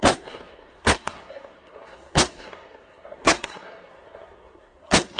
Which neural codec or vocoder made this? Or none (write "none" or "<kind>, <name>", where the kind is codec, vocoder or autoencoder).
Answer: codec, SNAC